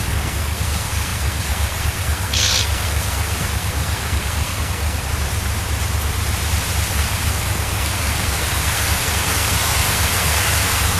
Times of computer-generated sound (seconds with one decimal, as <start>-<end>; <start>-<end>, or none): 0.0-5.1; 6.9-11.0